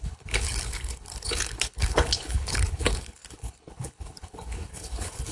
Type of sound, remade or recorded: remade